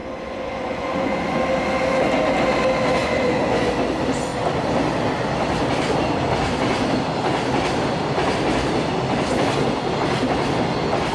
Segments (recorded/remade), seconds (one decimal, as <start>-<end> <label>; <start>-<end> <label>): 0.0-1.4 remade; 1.4-3.0 recorded; 3.0-3.7 remade; 3.7-11.1 recorded